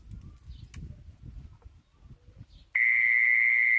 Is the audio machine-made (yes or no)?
no